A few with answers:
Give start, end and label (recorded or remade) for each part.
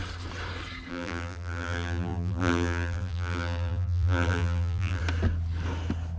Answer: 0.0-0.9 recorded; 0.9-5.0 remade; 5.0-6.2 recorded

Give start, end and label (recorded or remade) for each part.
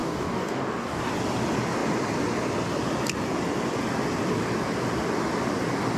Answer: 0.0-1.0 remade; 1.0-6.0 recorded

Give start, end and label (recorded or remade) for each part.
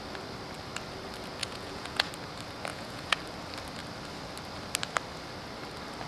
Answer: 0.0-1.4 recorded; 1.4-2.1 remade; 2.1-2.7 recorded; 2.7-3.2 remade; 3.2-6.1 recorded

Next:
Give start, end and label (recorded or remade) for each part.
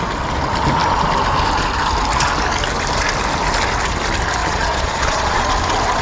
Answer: 0.0-4.4 recorded; 4.4-5.5 remade; 5.5-6.0 recorded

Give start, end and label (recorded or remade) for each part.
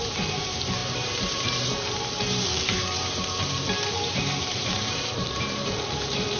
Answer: 0.0-6.4 remade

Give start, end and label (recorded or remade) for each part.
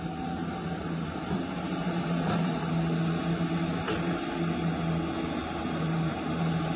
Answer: 0.0-2.7 remade; 2.7-5.4 recorded; 5.4-6.8 remade